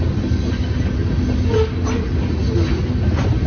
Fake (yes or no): no